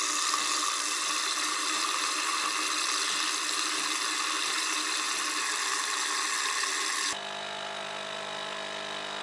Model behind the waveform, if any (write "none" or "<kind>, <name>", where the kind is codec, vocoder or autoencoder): none